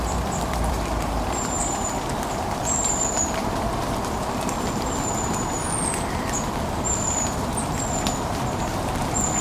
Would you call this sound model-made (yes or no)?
yes